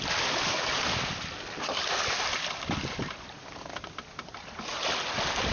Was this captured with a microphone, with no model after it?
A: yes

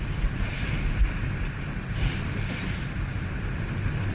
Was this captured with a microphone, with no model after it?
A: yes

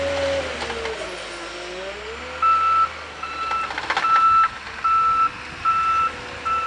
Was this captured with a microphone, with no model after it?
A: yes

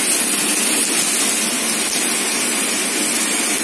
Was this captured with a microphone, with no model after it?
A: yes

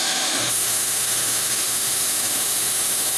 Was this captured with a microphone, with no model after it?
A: no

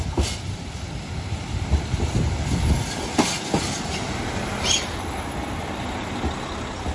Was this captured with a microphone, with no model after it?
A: yes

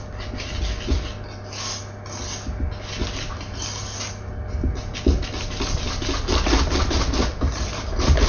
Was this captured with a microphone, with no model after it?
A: yes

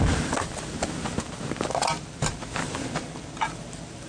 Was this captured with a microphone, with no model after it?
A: yes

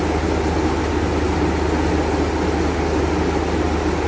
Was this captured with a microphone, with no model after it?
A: yes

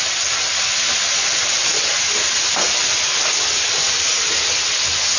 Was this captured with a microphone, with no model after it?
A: yes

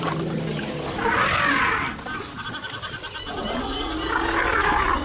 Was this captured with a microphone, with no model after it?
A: yes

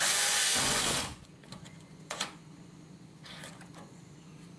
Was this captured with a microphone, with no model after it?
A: no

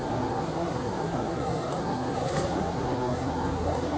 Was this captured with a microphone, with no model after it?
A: no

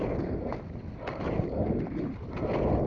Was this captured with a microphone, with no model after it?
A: yes